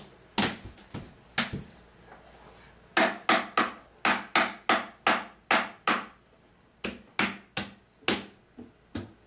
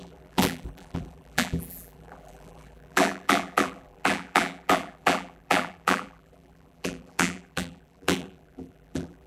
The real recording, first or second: first